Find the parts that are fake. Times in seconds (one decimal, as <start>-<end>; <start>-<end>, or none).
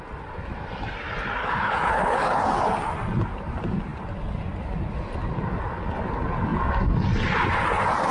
1.4-2.4